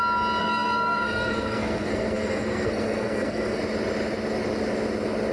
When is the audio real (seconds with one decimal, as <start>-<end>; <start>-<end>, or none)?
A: 0.0-0.4; 3.6-5.3